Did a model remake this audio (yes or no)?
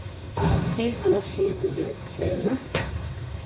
yes